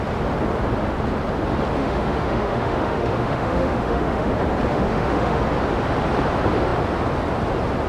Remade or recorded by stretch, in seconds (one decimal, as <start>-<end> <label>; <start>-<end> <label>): 0.0-1.8 recorded; 1.8-4.3 remade; 4.3-4.7 recorded; 4.7-5.4 remade; 5.4-7.9 recorded